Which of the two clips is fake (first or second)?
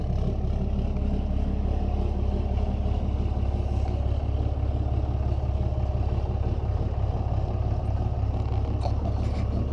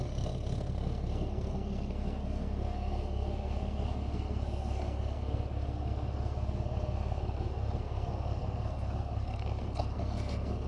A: second